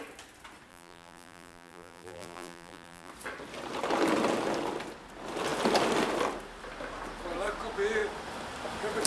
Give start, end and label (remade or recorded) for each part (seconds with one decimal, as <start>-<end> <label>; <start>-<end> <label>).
0.0-0.7 recorded; 0.7-3.1 remade; 3.1-9.1 recorded